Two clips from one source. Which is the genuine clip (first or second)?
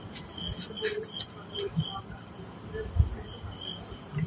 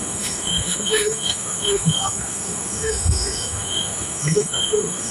first